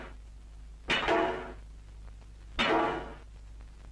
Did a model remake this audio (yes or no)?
no